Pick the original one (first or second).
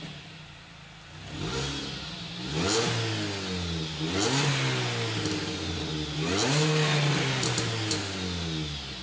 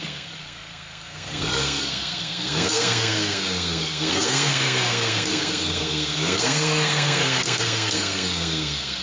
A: first